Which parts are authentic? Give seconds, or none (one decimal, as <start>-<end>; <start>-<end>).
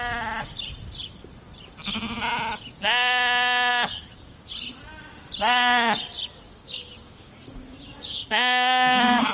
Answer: 0.0-3.7; 4.5-6.6